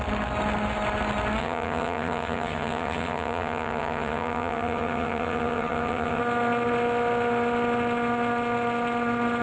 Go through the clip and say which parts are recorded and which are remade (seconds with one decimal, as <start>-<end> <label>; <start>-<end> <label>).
0.0-1.4 recorded; 1.4-6.2 remade; 6.2-9.4 recorded